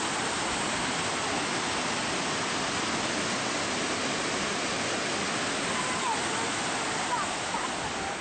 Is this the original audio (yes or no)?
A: yes